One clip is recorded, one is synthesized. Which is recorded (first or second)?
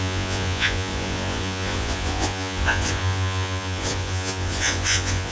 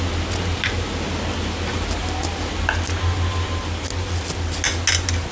second